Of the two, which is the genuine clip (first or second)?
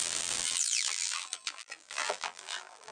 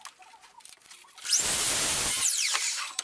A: second